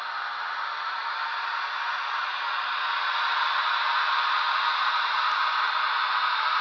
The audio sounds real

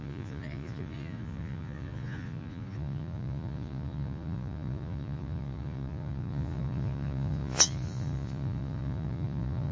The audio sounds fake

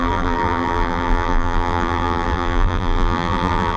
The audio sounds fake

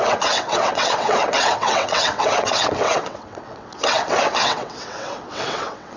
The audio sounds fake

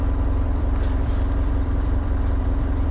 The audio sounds fake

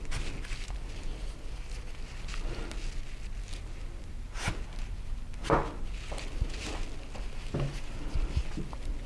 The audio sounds real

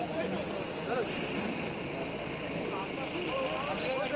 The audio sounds real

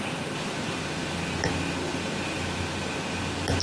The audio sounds real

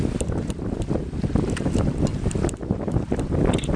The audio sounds real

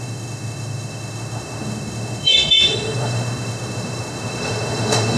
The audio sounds fake